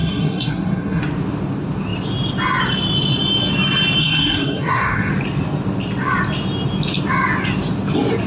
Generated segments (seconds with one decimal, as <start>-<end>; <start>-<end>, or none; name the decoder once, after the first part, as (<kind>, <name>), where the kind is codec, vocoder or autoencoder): 0.0-1.0 (codec, SNAC); 4.0-5.1